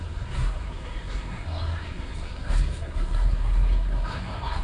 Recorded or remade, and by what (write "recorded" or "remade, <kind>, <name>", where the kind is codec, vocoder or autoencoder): remade, codec, SNAC